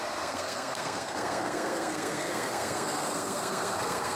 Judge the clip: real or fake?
fake